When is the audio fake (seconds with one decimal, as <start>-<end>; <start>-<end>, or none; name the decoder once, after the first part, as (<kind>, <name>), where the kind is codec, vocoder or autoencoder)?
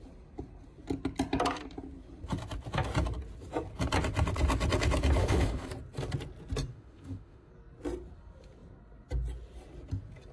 5.2-5.7 (autoencoder, DAC-VAE); 6.7-7.5